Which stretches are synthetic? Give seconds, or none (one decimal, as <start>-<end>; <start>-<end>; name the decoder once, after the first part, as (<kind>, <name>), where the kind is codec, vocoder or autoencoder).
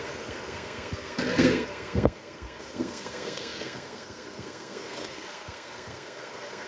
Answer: 0.0-6.7 (codec, SNAC)